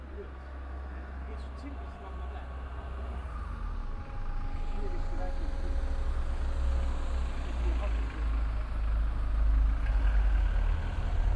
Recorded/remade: recorded